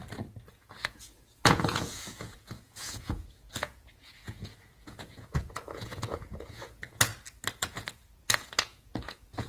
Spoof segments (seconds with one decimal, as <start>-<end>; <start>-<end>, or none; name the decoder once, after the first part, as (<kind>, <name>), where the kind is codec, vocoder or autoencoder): 0.5-7.1 (vocoder, Vocos); 7.6-9.5